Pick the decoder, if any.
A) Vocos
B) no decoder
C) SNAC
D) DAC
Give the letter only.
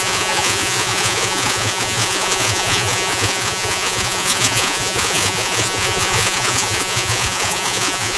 A